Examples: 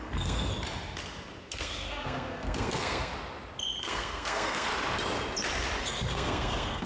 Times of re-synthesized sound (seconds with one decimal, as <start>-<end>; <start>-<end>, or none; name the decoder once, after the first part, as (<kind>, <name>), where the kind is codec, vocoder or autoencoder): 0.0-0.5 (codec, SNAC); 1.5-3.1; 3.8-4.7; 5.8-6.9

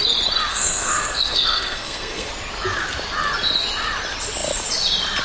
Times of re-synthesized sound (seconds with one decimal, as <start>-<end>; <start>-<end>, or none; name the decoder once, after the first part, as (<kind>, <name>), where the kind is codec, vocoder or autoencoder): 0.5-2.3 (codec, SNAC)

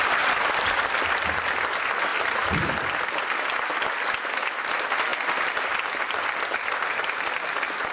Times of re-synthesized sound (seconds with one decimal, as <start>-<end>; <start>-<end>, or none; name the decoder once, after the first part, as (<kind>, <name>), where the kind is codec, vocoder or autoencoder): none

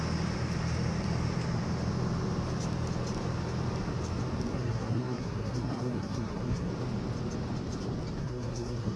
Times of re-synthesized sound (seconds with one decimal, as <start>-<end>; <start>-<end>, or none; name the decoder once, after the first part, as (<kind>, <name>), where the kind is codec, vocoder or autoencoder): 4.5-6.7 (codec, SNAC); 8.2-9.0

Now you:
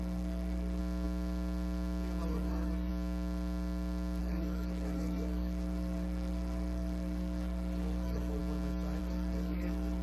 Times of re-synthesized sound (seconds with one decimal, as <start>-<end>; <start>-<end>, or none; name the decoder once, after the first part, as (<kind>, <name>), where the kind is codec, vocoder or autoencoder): 0.0-0.8 (codec, SNAC); 2.3-2.9; 4.2-8.4; 9.0-10.0

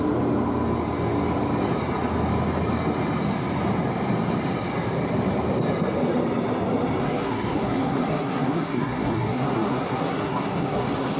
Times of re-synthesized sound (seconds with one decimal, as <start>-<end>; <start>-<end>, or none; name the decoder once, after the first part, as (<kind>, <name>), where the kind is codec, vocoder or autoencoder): 7.0-11.2 (codec, SNAC)

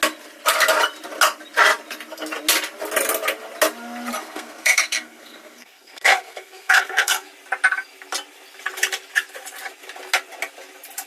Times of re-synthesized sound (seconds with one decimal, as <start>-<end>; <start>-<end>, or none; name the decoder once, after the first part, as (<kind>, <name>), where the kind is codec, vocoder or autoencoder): 4.2-7.3 (codec, SNAC)